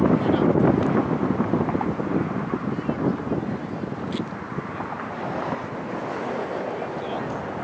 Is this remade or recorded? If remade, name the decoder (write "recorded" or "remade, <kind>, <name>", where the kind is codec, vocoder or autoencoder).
recorded